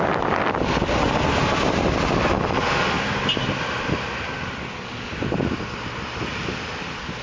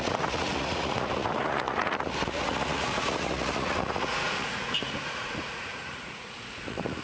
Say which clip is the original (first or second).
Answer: first